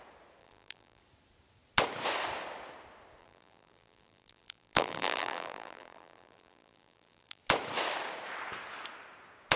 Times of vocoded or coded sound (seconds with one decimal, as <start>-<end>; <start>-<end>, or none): 0.4-1.0; 3.2-7.4